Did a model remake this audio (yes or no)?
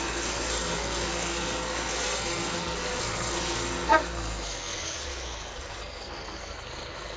yes